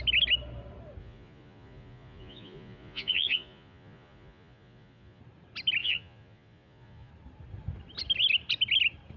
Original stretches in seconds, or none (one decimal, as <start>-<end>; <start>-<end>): 0.0-1.0; 5.2-5.8; 7.1-9.2